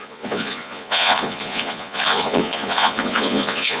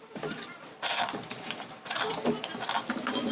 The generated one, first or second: first